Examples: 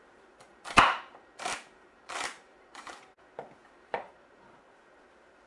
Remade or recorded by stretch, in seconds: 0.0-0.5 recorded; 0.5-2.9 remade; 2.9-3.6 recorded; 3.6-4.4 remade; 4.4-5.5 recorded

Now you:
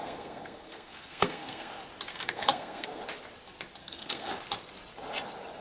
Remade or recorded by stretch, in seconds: 0.0-1.7 remade; 1.7-2.1 recorded; 2.1-3.0 remade; 3.0-3.8 recorded; 3.8-4.3 remade; 4.3-5.6 recorded

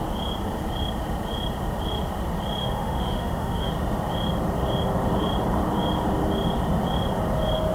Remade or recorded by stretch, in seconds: 0.0-2.6 recorded; 2.6-3.7 remade; 3.7-7.7 recorded

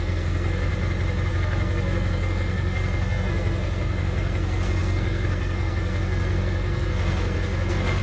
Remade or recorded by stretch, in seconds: 0.0-0.7 remade; 0.7-1.3 recorded; 1.3-8.0 remade

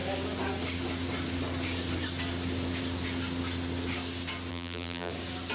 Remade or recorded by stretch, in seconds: 0.0-4.5 recorded; 4.5-5.1 remade; 5.1-5.5 recorded